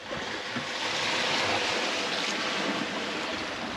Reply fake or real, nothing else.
real